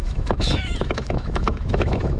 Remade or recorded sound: remade